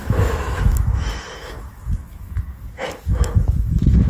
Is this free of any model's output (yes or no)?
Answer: no